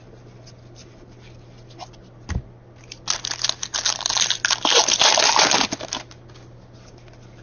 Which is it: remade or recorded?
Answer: recorded